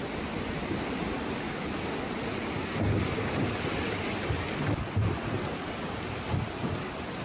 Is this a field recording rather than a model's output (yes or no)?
yes